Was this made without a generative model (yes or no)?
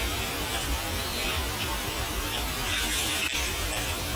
no